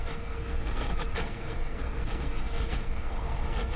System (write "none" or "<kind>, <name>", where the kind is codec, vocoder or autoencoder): codec, SNAC